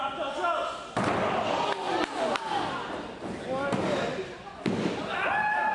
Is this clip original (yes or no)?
yes